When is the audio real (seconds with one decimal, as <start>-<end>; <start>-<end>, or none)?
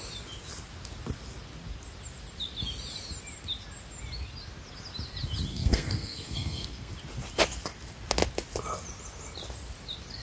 0.0-5.5; 6.9-10.2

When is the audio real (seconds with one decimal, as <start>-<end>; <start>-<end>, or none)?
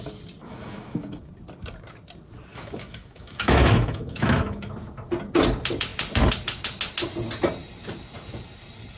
0.0-0.4; 1.3-2.5; 4.7-9.0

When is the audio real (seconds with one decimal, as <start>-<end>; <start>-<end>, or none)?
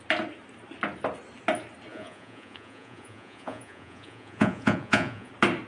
0.0-1.9; 5.3-5.7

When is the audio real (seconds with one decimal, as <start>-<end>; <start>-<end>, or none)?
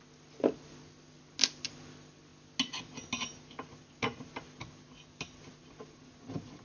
0.0-6.6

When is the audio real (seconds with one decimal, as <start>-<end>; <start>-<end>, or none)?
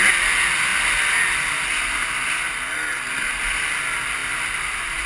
0.0-5.1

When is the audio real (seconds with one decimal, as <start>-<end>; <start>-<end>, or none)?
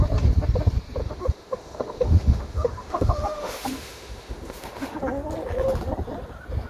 0.0-1.0; 5.0-6.7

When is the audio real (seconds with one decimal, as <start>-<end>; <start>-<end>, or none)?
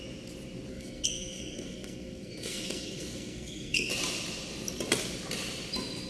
0.0-0.7; 3.9-6.1